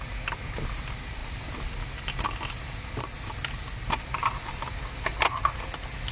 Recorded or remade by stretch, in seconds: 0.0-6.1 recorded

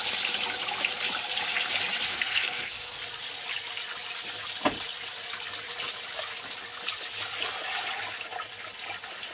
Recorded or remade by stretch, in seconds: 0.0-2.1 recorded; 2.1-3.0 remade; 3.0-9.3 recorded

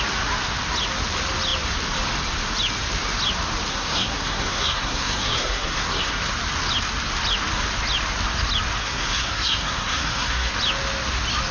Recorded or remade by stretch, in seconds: 0.0-3.7 recorded; 3.7-6.3 remade; 6.3-8.8 recorded; 8.8-10.5 remade; 10.5-11.5 recorded

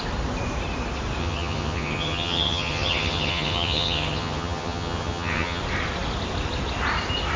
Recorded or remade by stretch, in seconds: 0.0-1.2 recorded; 1.2-5.6 remade; 5.6-7.4 recorded